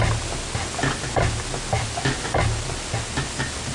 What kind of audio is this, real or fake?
real